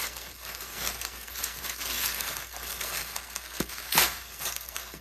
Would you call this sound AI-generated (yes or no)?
yes